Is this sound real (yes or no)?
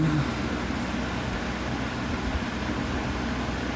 yes